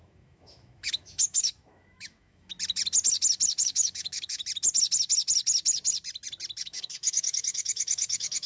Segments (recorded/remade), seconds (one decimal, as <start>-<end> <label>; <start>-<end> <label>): 0.0-2.5 remade; 2.5-3.6 recorded; 3.6-4.4 remade; 4.4-6.6 recorded; 6.6-8.5 remade